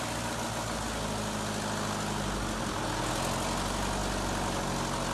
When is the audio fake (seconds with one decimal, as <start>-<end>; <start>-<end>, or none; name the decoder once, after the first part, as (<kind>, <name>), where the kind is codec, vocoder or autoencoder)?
none